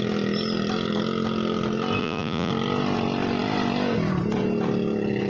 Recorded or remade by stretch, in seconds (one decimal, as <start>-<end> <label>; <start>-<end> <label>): 0.0-2.0 recorded; 2.0-2.5 remade; 2.5-5.3 recorded